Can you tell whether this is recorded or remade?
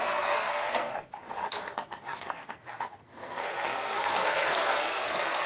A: remade